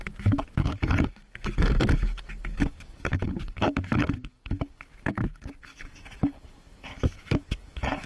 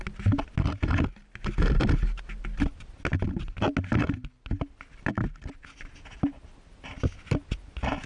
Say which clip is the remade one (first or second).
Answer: first